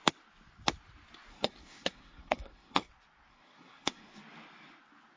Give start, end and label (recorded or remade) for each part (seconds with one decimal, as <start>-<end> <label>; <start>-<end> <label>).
0.0-1.3 recorded; 1.3-2.9 remade; 2.9-3.3 recorded; 3.3-4.2 remade; 4.2-5.2 recorded